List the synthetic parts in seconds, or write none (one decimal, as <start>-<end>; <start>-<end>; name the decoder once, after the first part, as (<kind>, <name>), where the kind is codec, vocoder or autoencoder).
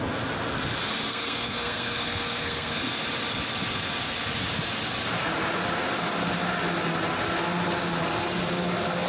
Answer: 1.1-2.8 (codec, SNAC)